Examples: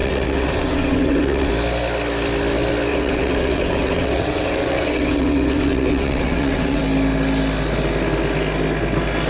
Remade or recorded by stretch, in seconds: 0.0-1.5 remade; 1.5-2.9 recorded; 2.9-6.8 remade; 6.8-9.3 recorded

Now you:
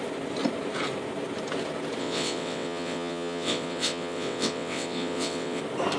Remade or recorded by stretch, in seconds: 0.0-2.0 recorded; 2.0-5.6 remade; 5.6-6.0 recorded

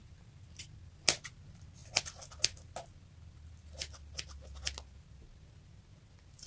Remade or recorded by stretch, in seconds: 0.0-6.5 recorded

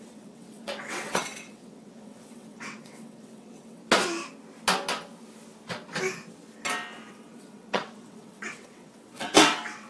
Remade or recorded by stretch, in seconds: 0.0-3.8 remade; 3.8-7.1 recorded; 7.1-9.9 remade

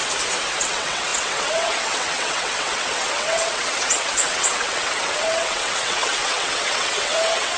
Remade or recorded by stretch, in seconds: 0.0-0.6 recorded; 0.6-7.6 remade

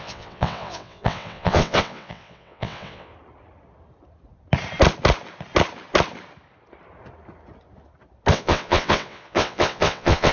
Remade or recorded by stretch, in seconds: 0.0-3.1 remade; 3.1-8.3 recorded; 8.3-10.3 remade